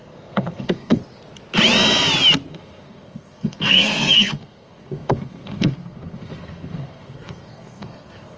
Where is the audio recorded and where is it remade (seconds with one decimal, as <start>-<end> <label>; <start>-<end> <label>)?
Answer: 0.0-1.0 remade; 1.0-2.5 recorded; 2.5-8.4 remade